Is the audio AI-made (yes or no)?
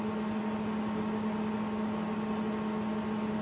no